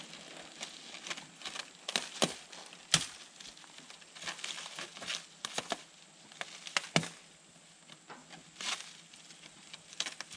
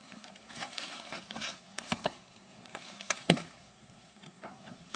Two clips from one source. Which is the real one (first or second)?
first